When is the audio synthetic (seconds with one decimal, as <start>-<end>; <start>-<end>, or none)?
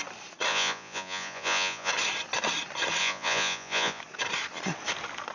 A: 0.5-1.9; 3.0-4.0